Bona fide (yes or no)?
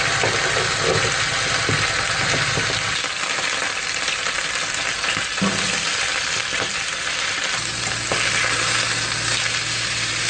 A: yes